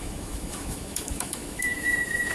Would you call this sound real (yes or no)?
no